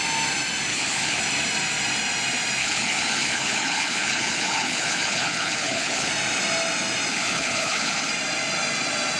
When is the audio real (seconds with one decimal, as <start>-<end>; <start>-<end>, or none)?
0.0-0.7; 1.2-2.6; 6.1-7.1; 8.1-9.2

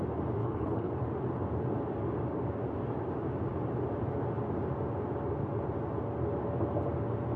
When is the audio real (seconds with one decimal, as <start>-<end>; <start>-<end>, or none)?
0.0-0.4; 0.9-7.4

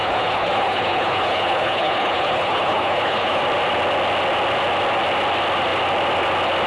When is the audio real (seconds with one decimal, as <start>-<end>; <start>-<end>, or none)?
3.4-6.7

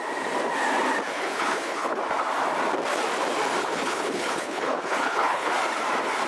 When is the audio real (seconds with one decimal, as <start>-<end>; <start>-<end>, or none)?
0.0-1.1; 2.0-3.6; 5.5-6.3

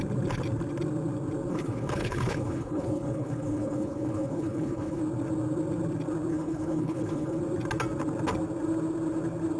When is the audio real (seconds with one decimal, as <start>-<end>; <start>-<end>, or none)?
0.0-1.5; 5.0-6.3; 7.4-9.6

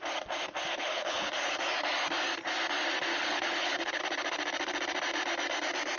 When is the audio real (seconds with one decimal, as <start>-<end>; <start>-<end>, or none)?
0.0-0.7; 1.7-3.1; 4.0-6.0

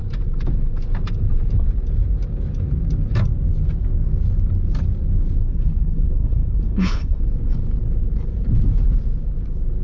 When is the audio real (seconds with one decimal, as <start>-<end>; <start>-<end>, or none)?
0.0-5.4; 7.2-9.8

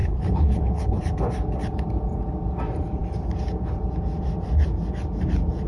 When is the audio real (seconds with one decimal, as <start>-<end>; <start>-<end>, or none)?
1.0-5.7